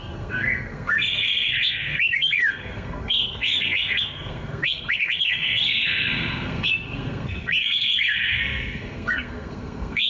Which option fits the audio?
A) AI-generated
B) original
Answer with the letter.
A